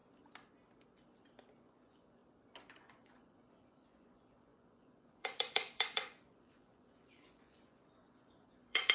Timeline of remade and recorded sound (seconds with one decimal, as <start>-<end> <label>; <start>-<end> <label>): 0.0-1.6 recorded; 1.6-2.2 remade; 2.2-2.8 recorded; 2.8-8.9 remade